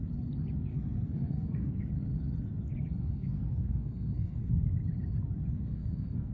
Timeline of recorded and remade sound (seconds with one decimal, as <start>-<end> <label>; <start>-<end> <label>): 0.0-0.7 recorded; 0.7-1.7 remade; 1.7-3.0 recorded; 3.0-4.5 remade; 4.5-5.5 recorded; 5.5-6.3 remade